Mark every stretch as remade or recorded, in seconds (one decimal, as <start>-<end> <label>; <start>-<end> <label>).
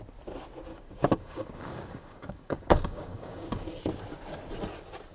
0.0-0.7 recorded; 0.7-3.8 remade; 3.8-5.1 recorded